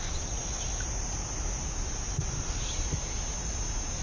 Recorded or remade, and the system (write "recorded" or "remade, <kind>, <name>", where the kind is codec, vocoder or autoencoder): recorded